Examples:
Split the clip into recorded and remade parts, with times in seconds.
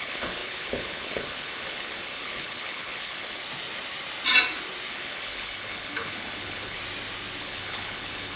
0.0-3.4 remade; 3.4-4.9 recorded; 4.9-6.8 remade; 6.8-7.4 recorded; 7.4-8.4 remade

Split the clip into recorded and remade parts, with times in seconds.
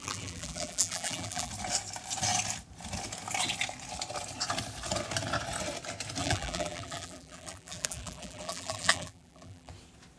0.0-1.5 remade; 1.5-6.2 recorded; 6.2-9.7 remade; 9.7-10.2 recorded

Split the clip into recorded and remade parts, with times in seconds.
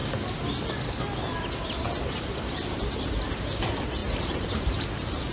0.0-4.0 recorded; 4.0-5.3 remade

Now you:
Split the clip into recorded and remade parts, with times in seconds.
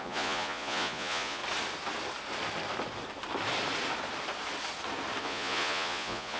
0.0-1.4 remade; 1.4-5.2 recorded; 5.2-6.4 remade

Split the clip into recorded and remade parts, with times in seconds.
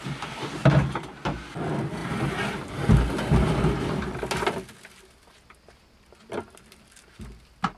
0.0-7.8 recorded